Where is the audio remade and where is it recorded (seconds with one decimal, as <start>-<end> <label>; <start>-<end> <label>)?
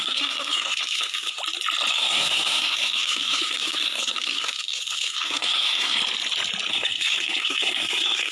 0.0-1.4 remade; 1.4-1.9 recorded; 1.9-6.0 remade; 6.0-6.7 recorded; 6.7-8.3 remade